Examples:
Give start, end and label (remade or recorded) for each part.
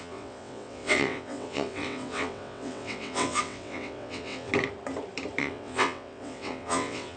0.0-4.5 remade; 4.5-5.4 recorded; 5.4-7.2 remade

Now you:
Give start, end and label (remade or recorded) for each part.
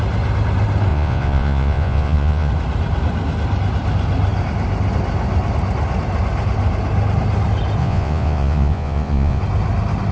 0.0-0.9 recorded; 0.9-2.5 remade; 2.5-7.8 recorded; 7.8-9.4 remade; 9.4-10.1 recorded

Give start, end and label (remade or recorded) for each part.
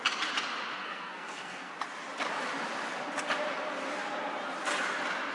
0.0-0.8 recorded; 0.8-1.7 remade; 1.7-5.3 recorded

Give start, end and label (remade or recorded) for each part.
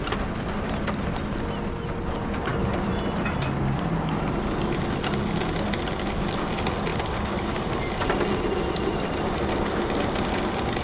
0.0-10.8 recorded